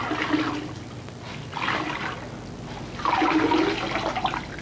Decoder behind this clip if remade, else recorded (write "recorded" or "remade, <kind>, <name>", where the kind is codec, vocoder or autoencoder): recorded